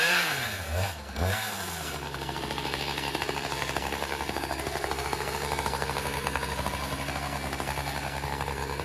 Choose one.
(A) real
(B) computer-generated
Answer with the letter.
B